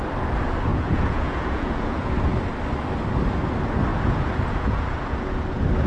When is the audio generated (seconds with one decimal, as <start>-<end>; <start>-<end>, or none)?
0.7-2.1; 3.9-5.5